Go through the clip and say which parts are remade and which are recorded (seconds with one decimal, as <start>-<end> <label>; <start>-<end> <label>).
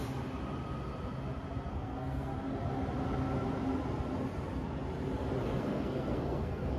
0.0-1.7 recorded; 1.7-2.3 remade; 2.3-5.4 recorded; 5.4-6.8 remade